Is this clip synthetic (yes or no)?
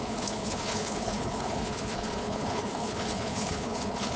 yes